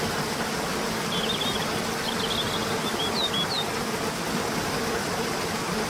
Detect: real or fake real